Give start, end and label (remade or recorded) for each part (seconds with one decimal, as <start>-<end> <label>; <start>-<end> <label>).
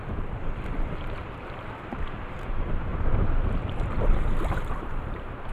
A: 0.0-2.9 remade; 2.9-4.5 recorded; 4.5-5.5 remade